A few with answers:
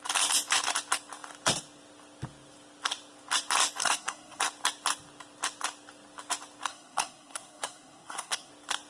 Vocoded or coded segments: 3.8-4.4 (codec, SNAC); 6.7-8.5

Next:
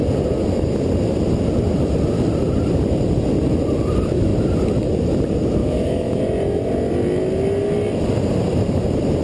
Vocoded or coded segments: 5.6-6.2 (autoencoder, DAC-VAE)

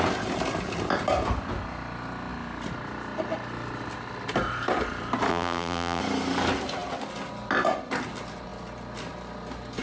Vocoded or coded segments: 5.3-6.0 (vocoder, BigVGAN v2)